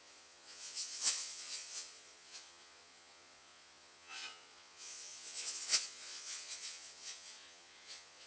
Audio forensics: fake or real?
fake